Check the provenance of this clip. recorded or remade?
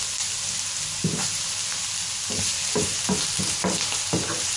recorded